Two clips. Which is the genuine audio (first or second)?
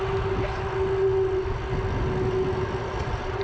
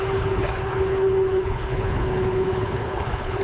first